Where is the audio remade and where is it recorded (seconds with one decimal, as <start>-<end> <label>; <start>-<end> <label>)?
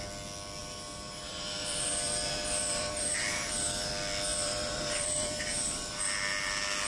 0.0-0.6 recorded; 0.6-3.9 remade; 3.9-4.3 recorded; 4.3-6.0 remade; 6.0-6.9 recorded